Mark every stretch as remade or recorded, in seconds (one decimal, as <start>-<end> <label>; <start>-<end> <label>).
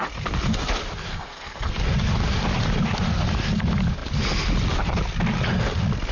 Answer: 0.0-1.1 recorded; 1.1-1.8 remade; 1.8-6.1 recorded